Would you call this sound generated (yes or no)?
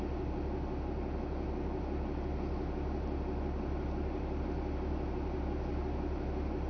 no